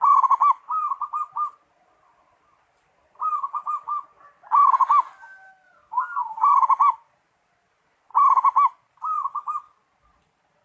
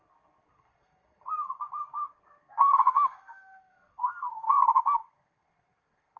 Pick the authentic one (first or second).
first